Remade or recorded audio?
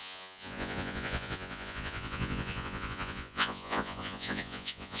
remade